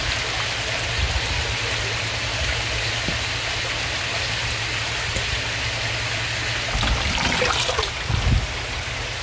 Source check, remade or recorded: recorded